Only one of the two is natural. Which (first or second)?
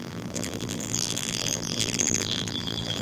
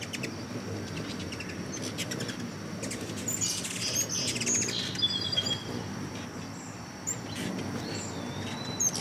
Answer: second